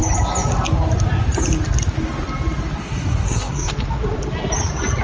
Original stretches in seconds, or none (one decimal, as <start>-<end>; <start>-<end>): 0.0-2.8; 3.7-5.0